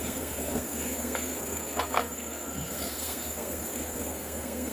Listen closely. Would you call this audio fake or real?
fake